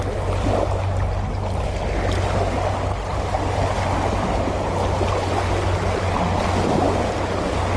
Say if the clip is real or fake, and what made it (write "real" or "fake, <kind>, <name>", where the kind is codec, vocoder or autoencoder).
real